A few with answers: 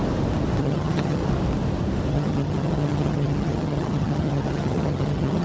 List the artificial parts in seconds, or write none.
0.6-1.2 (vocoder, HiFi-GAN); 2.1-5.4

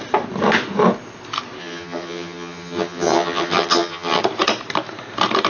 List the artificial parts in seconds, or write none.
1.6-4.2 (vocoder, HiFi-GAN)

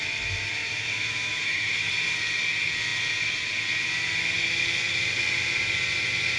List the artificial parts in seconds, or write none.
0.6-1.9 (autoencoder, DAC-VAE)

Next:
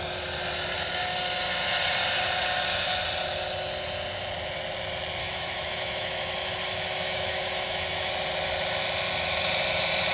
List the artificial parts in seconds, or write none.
5.2-8.1 (autoencoder, DAC-VAE)